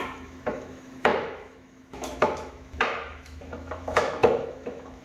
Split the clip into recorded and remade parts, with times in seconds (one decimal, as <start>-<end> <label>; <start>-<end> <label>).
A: 0.0-5.0 remade